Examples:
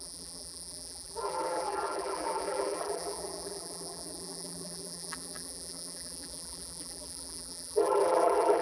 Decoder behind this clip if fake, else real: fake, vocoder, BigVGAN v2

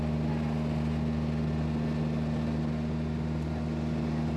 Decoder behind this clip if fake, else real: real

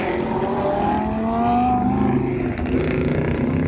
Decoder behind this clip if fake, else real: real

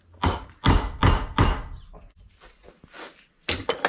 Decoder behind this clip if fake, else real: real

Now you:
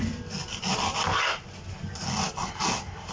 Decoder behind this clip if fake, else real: real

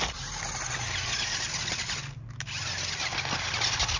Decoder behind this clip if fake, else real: real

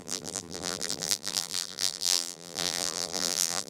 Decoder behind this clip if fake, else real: fake, vocoder, BigVGAN v2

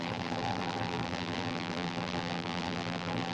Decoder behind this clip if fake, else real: fake, vocoder, BigVGAN v2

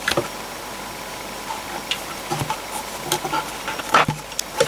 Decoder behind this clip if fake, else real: real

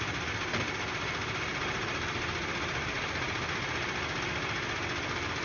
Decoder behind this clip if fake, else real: real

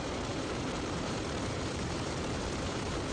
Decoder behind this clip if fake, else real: fake, vocoder, BigVGAN v2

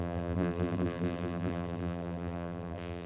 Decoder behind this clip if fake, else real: fake, vocoder, BigVGAN v2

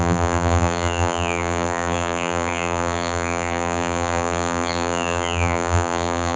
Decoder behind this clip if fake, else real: fake, vocoder, BigVGAN v2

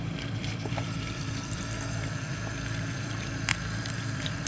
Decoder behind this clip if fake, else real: fake, vocoder, BigVGAN v2